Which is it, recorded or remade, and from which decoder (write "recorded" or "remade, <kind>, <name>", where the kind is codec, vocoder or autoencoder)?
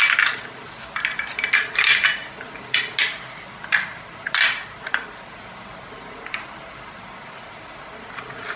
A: recorded